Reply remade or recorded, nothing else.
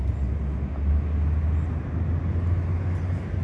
recorded